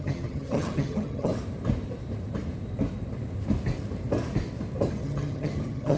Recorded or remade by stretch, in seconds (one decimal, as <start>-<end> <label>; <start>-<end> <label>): 0.0-1.3 remade; 1.3-4.9 recorded; 4.9-6.0 remade